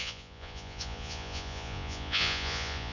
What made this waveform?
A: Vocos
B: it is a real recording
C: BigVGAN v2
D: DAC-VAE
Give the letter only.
A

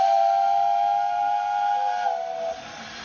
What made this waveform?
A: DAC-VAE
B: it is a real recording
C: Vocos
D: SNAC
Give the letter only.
B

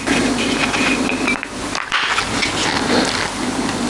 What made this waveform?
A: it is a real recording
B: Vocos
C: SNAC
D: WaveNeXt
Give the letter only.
A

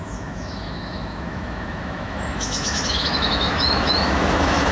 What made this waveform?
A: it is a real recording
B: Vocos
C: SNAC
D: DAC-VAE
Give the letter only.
D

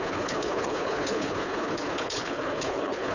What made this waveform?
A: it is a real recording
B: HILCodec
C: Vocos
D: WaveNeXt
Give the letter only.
B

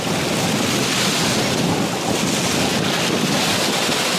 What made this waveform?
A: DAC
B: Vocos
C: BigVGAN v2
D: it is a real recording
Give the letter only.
D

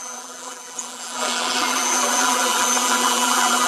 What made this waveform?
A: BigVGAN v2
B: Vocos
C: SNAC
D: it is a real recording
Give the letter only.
A